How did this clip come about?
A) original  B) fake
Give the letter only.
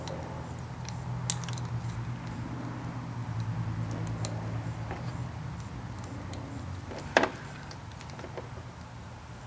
A